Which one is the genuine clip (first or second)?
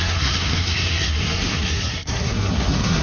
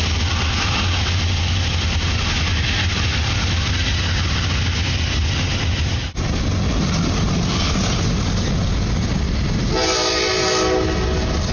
second